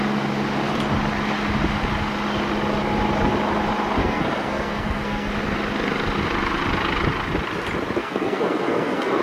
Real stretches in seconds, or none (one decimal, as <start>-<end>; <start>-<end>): 0.0-4.0; 5.3-8.0